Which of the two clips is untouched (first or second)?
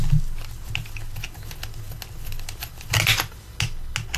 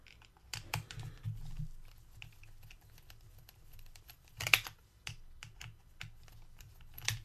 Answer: first